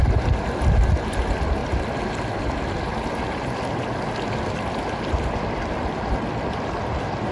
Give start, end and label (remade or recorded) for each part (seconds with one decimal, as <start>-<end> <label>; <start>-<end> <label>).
0.0-7.3 recorded